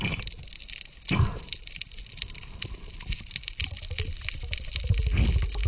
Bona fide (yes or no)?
yes